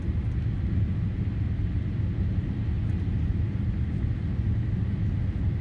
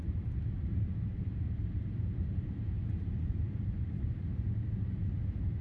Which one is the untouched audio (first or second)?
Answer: first